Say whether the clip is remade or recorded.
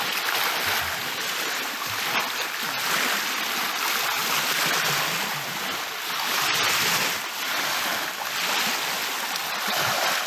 recorded